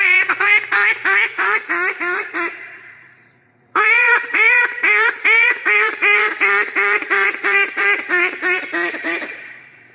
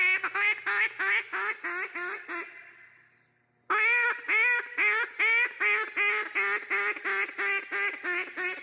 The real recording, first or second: second